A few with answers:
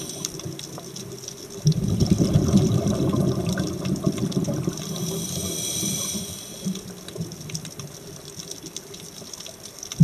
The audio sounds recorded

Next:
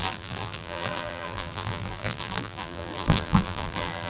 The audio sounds remade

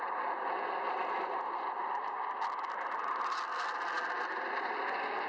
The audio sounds recorded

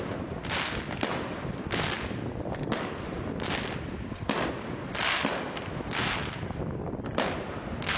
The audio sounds recorded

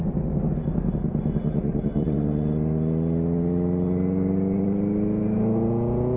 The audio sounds recorded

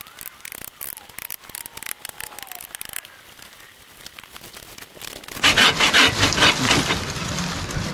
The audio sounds recorded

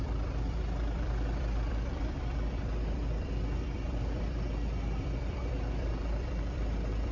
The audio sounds remade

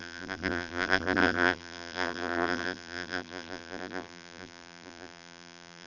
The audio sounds remade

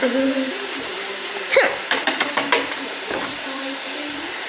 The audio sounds remade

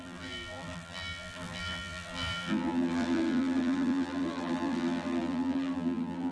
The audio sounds remade